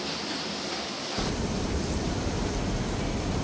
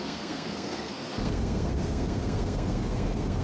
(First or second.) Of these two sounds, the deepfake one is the second